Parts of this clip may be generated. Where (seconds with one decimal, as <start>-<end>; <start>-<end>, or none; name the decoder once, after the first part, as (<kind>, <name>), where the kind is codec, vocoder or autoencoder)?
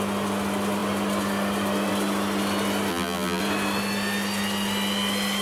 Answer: 2.9-3.4 (vocoder, BigVGAN v2)